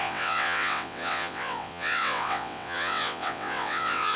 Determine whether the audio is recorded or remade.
remade